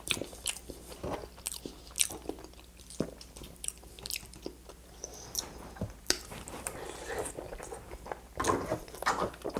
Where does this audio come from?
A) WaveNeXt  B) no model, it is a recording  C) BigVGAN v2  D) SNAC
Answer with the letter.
C